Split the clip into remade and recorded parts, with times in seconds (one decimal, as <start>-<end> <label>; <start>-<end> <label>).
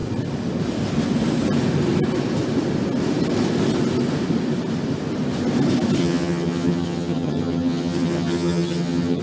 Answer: 0.0-6.0 recorded; 6.0-9.2 remade